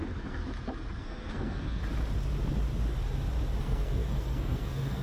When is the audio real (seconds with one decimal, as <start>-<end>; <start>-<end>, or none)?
0.4-1.0; 1.8-3.6